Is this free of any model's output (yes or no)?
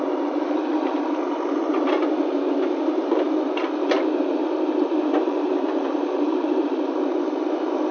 no